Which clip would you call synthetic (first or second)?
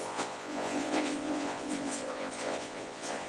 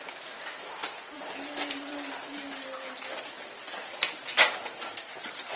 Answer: first